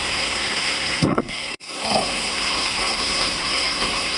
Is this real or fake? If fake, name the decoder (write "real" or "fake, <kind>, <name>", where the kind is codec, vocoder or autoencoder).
fake, codec, SNAC